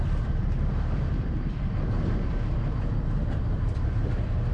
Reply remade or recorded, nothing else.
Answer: remade